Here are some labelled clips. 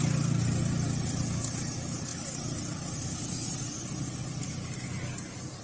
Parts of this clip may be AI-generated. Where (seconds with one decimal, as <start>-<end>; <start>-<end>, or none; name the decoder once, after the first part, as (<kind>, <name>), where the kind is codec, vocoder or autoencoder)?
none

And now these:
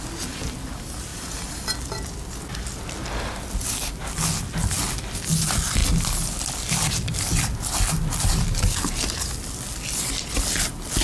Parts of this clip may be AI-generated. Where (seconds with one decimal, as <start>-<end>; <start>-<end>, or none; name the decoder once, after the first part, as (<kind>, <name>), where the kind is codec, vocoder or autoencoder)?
none

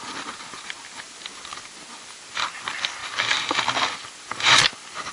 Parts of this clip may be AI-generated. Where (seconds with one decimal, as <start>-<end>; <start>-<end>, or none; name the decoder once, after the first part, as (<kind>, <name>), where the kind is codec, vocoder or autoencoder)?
none

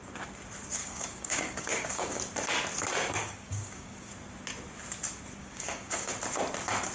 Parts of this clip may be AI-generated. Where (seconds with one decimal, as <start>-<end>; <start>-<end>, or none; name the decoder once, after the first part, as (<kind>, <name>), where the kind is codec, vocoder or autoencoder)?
0.8-2.2 (codec, DAC); 3.2-4.1; 5.4-6.1

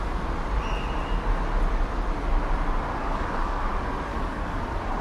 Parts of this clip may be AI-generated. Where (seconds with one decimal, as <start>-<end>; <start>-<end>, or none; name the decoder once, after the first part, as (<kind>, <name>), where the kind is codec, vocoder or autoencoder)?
3.0-3.6 (codec, DAC); 4.1-4.6

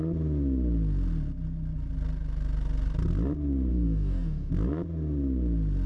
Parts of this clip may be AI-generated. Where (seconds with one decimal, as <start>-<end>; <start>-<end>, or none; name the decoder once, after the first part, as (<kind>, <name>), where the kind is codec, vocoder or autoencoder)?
3.7-4.5 (codec, DAC)